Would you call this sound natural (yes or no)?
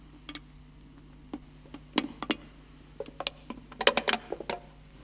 yes